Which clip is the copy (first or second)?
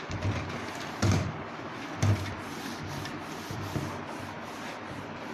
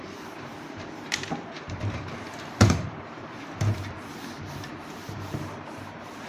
second